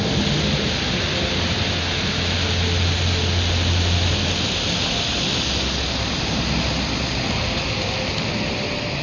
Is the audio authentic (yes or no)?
yes